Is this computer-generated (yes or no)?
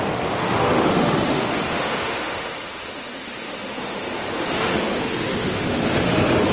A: yes